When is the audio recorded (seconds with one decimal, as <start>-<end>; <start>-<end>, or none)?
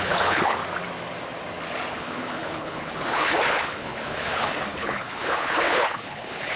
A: 0.6-1.9